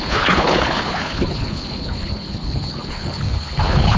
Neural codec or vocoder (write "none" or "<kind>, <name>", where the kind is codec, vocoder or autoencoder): codec, HILCodec